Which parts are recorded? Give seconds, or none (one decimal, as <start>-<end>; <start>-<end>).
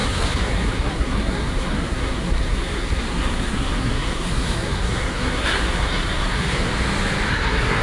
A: 6.7-7.3